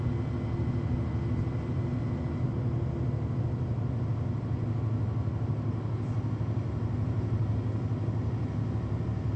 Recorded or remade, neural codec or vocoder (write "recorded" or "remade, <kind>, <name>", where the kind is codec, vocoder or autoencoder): recorded